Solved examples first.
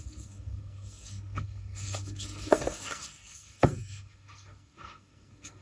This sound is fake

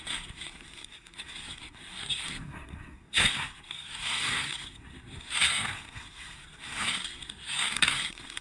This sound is fake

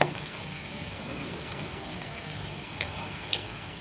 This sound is fake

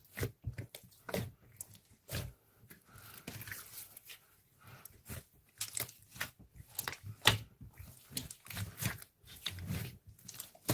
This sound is real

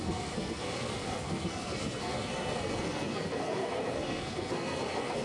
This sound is fake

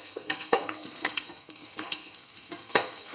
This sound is fake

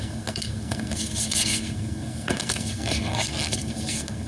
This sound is fake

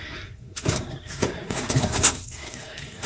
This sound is fake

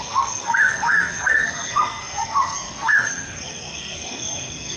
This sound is fake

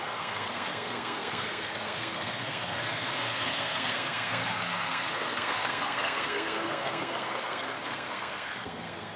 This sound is fake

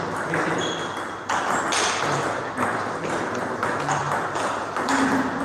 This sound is real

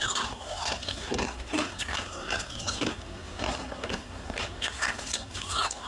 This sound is fake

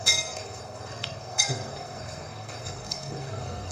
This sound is fake